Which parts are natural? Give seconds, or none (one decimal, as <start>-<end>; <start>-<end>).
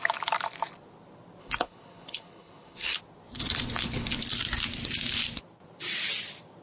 0.0-1.4; 3.0-3.4; 4.3-6.6